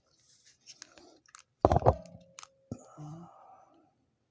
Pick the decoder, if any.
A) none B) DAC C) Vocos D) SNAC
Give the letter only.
A